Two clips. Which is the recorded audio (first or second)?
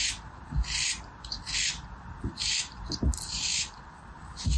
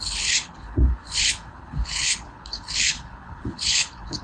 first